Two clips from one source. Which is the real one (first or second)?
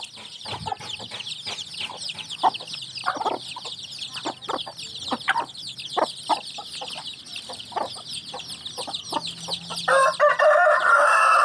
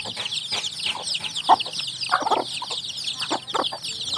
second